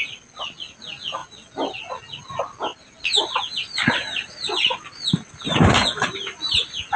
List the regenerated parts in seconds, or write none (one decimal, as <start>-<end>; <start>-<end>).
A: none